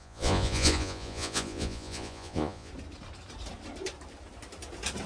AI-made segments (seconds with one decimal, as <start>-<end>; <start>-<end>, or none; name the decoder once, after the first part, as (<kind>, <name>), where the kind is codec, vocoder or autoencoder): 0.0-2.7 (vocoder, Vocos)